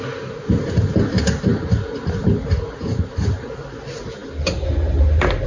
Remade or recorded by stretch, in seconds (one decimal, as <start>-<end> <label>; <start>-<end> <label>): 0.0-5.5 recorded